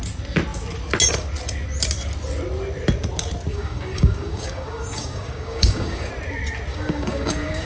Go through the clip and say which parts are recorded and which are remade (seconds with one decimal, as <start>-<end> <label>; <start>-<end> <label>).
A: 0.0-3.5 recorded; 3.5-6.1 remade; 6.1-6.7 recorded; 6.7-7.7 remade